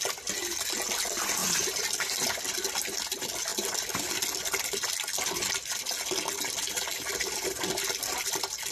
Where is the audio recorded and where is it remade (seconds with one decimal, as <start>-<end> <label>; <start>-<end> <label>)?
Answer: 0.0-1.4 recorded; 1.4-2.4 remade; 2.4-6.9 recorded; 6.9-7.7 remade; 7.7-8.7 recorded